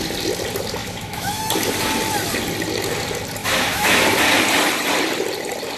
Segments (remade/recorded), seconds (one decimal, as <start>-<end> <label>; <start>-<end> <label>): 0.0-0.8 recorded; 0.8-1.4 remade; 1.4-3.4 recorded; 3.4-4.0 remade; 4.0-5.8 recorded